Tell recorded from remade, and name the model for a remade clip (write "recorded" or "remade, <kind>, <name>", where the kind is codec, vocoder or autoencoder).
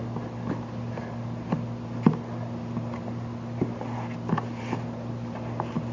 recorded